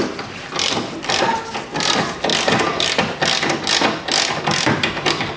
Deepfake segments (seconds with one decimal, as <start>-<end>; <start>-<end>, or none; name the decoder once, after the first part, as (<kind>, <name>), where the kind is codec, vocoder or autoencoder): none

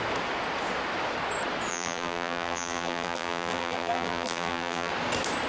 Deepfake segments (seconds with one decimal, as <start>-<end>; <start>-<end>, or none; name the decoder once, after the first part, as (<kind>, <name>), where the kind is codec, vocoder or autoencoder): 1.7-4.9 (vocoder, BigVGAN v2)

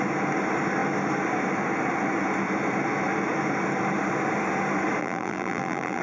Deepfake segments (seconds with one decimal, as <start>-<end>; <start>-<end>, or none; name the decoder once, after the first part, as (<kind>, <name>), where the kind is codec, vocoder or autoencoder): 5.0-6.0 (vocoder, BigVGAN v2)

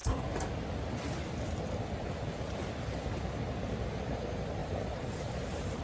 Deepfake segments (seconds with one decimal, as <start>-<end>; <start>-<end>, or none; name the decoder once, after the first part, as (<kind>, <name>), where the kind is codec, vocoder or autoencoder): 4.6-5.8 (vocoder, BigVGAN v2)